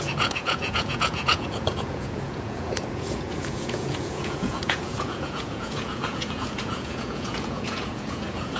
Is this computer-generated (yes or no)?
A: yes